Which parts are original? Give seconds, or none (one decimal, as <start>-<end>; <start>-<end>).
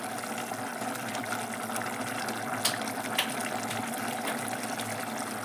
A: 0.0-5.4